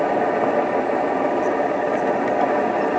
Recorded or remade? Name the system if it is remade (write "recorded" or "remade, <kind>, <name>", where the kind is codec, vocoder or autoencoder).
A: recorded